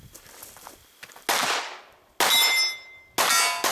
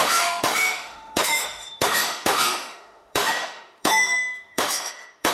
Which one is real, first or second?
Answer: first